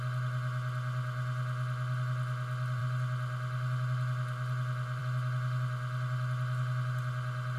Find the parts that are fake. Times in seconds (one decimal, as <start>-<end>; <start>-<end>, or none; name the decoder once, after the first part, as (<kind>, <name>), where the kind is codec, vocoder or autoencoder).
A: none